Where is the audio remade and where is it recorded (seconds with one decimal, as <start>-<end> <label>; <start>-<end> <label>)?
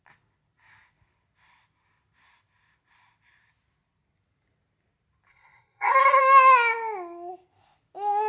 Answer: 0.0-5.3 recorded; 5.3-6.2 remade; 6.2-8.3 recorded